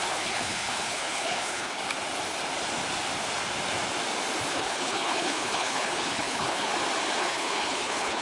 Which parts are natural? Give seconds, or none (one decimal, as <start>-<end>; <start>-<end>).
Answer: 1.8-4.5; 6.7-7.2